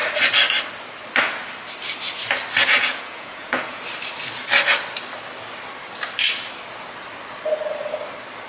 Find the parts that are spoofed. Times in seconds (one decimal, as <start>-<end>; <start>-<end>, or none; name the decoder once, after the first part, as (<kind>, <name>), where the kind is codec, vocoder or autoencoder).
2.6-3.8 (vocoder, Vocos)